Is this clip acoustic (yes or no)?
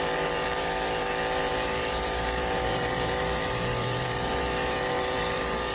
no